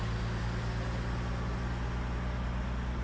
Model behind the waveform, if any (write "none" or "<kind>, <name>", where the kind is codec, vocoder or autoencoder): none